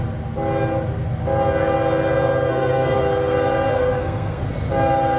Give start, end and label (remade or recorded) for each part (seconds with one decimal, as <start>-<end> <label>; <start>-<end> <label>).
0.0-2.5 recorded; 2.5-3.0 remade; 3.0-3.7 recorded; 3.7-4.4 remade; 4.4-5.2 recorded